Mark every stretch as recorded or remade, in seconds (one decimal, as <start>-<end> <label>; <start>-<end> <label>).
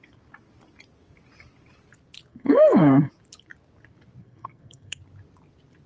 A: 0.0-2.3 recorded; 2.3-3.1 remade; 3.1-4.2 recorded; 4.2-5.0 remade; 5.0-5.9 recorded